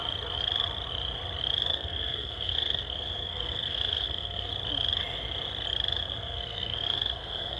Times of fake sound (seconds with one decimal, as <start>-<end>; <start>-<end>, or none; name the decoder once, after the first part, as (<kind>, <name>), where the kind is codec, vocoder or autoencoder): 1.7-4.5 (codec, SNAC); 6.0-7.6